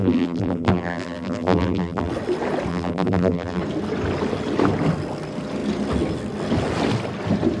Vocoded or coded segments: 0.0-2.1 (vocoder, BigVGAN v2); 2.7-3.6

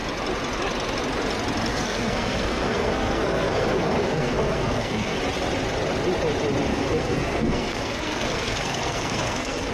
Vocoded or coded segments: 1.7-5.2 (codec, SNAC); 6.7-9.7